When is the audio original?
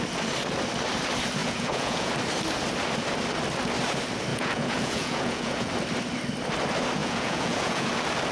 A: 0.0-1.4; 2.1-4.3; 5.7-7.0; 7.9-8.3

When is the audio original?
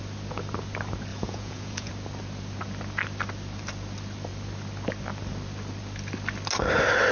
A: 0.0-1.1; 1.9-7.1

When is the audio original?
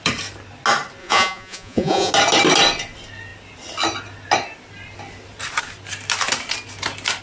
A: 0.0-1.0; 2.1-7.2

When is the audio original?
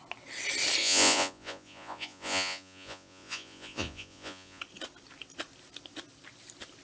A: 0.0-0.8; 4.6-6.8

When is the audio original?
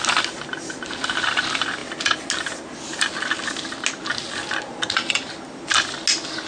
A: 0.0-6.5